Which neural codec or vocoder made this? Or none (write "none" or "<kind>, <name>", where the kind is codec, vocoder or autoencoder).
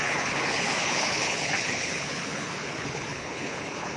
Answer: codec, HILCodec